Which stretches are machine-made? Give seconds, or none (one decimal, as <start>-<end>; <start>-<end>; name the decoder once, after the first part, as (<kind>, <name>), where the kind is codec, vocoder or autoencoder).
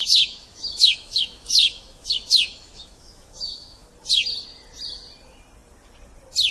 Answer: 0.0-3.9 (autoencoder, DAC-VAE)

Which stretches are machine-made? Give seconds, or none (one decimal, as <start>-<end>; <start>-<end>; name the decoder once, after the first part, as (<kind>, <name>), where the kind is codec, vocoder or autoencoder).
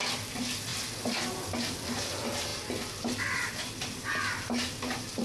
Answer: none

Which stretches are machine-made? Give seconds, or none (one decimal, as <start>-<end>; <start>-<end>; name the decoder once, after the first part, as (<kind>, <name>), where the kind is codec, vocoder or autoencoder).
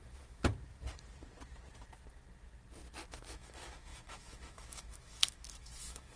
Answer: 0.0-0.5 (autoencoder, DAC-VAE); 3.2-6.2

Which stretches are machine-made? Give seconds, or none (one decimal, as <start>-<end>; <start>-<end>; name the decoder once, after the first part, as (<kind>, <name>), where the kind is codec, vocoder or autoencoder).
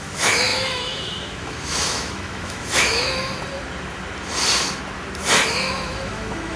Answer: 0.0-3.2 (autoencoder, DAC-VAE); 5.6-6.6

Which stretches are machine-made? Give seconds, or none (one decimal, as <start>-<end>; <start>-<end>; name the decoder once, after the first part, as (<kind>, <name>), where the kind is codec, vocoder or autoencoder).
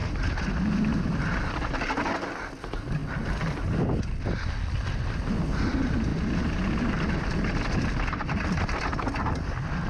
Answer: none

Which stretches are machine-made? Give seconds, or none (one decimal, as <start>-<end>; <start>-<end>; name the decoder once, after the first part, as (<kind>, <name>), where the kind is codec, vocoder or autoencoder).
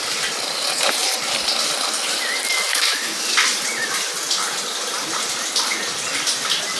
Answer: 2.7-3.2 (autoencoder, DAC-VAE)